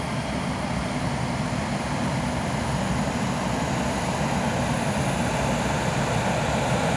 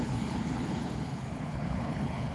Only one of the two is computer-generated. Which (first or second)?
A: second